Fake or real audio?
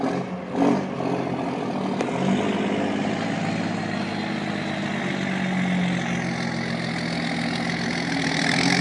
real